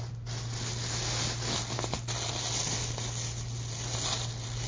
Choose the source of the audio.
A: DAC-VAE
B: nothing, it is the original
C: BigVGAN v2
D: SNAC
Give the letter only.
B